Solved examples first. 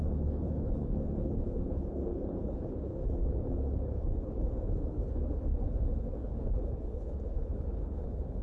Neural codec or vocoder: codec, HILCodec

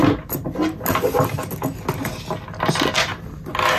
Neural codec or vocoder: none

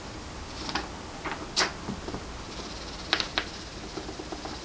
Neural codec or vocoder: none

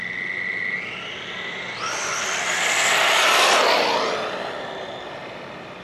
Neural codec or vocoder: none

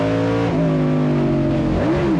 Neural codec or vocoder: none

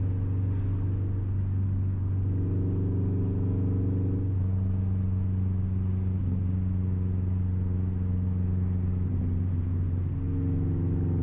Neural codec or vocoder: none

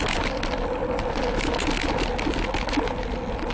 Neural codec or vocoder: none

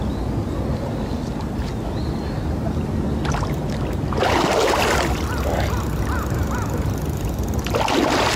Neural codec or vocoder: none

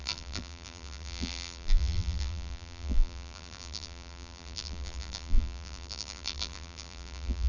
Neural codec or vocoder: vocoder, BigVGAN v2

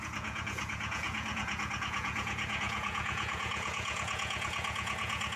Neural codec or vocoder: vocoder, Vocos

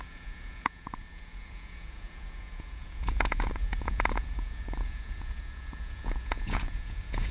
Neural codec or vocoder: vocoder, Vocos